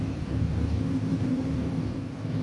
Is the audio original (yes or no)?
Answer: no